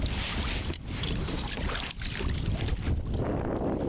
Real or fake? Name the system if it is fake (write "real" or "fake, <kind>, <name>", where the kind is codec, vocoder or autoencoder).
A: real